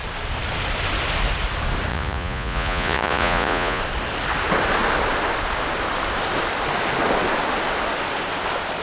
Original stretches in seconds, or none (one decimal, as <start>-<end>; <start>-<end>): 0.0-1.9; 3.8-8.8